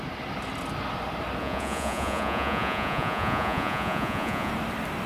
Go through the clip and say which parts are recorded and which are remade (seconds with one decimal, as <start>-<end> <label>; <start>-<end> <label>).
0.0-1.4 recorded; 1.4-4.5 remade; 4.5-5.1 recorded